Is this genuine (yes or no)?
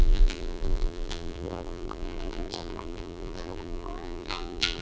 no